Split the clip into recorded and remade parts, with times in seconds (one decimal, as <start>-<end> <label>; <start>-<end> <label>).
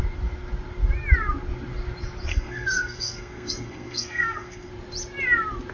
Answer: 0.0-2.3 recorded; 2.3-4.7 remade; 4.7-5.7 recorded